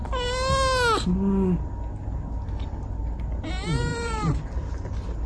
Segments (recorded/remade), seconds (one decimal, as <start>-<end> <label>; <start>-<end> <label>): 0.0-3.9 recorded; 3.9-4.7 remade; 4.7-5.3 recorded